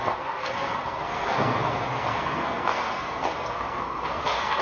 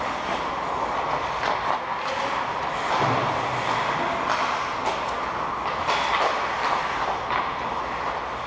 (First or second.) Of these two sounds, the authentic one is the second